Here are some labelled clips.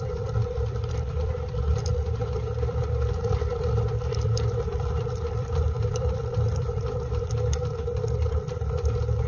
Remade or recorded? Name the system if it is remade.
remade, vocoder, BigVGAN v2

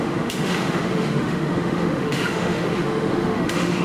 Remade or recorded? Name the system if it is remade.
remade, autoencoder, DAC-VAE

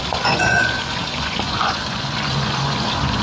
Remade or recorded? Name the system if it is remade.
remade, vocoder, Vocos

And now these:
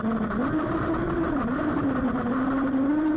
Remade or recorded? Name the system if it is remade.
remade, vocoder, BigVGAN v2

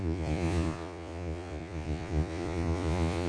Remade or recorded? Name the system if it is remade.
remade, vocoder, Vocos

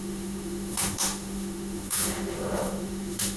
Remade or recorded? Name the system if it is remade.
remade, autoencoder, DAC-VAE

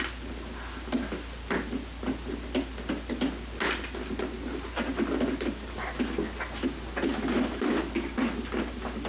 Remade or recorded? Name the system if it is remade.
recorded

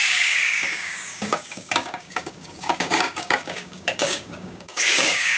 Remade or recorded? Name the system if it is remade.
remade, codec, DAC